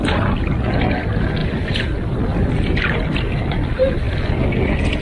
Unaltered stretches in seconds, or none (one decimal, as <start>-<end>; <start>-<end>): 0.0-5.0